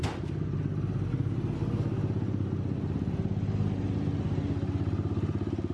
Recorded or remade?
recorded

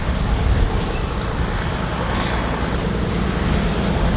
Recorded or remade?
recorded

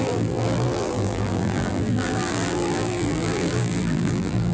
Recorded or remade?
remade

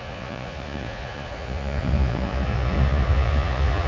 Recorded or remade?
remade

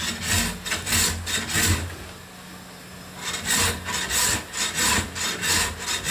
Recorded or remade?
recorded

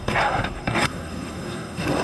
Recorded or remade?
remade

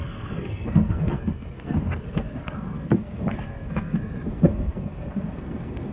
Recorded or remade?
remade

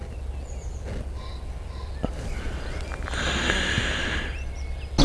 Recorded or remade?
recorded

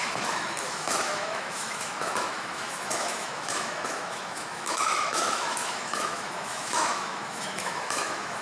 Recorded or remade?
remade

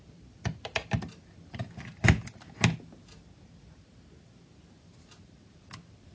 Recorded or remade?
recorded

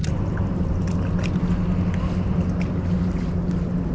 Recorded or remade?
recorded